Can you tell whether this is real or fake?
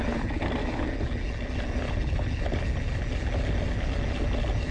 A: real